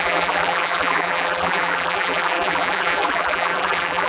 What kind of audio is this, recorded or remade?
remade